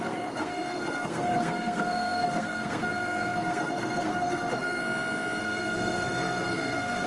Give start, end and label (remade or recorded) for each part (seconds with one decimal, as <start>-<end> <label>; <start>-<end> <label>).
0.0-4.8 remade; 4.8-5.4 recorded; 5.4-7.1 remade